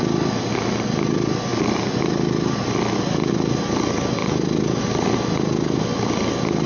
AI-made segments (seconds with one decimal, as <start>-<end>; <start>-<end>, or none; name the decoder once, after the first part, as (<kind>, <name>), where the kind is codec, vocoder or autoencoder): none